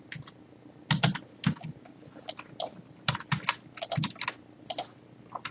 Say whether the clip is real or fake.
real